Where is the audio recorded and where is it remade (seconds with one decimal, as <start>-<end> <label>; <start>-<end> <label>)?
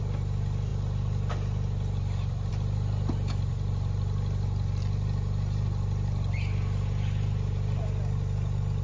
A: 0.0-8.8 recorded